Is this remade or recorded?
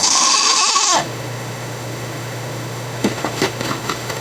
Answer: remade